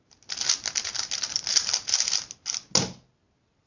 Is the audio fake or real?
real